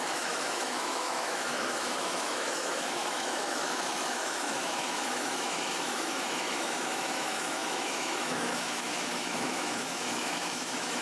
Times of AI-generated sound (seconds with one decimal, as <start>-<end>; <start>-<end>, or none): 0.0-11.0